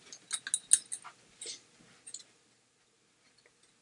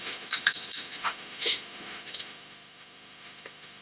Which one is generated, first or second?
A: second